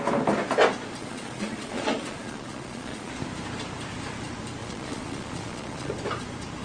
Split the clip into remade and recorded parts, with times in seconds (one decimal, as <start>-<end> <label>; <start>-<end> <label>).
0.0-1.0 recorded; 1.0-3.1 remade; 3.1-4.6 recorded; 4.6-5.9 remade; 5.9-6.6 recorded